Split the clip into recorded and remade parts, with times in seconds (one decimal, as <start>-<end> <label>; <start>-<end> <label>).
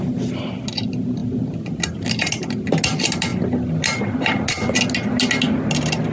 0.0-6.1 recorded